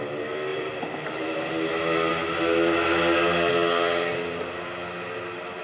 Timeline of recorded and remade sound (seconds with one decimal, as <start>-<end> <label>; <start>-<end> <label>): 0.0-0.5 recorded; 0.5-1.5 remade; 1.5-5.6 recorded